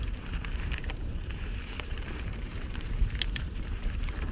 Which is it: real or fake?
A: fake